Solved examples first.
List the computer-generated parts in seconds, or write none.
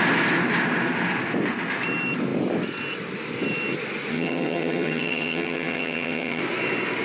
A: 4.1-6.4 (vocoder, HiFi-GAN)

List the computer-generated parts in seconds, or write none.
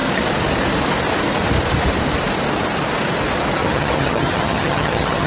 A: 3.6-5.3 (vocoder, HiFi-GAN)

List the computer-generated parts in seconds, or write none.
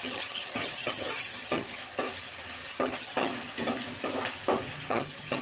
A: 0.0-1.8 (vocoder, HiFi-GAN); 2.7-3.3; 4.9-5.4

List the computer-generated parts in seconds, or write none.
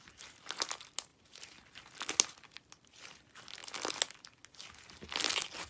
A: none